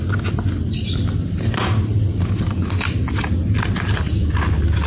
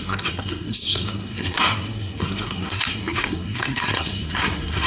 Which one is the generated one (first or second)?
second